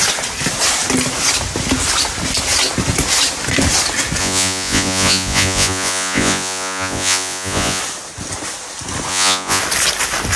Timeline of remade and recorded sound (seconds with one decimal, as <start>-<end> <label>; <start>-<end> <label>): 0.0-4.2 recorded; 4.2-7.8 remade; 7.8-9.1 recorded; 9.1-9.6 remade; 9.6-10.4 recorded